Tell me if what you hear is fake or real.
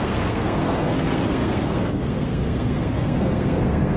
fake